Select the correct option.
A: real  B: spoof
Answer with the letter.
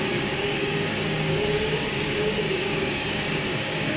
B